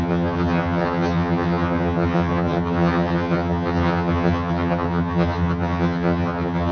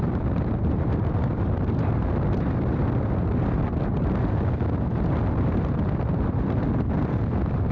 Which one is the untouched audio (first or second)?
second